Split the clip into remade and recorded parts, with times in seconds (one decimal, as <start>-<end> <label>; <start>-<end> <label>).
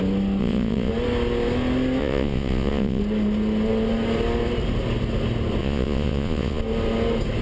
0.0-0.4 recorded; 0.4-0.9 remade; 0.9-2.0 recorded; 2.0-3.0 remade; 3.0-5.6 recorded; 5.6-6.6 remade; 6.6-7.4 recorded